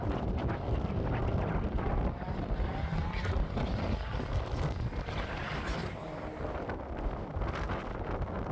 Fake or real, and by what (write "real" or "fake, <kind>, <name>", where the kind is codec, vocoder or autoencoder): real